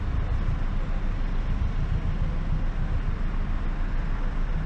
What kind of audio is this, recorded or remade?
recorded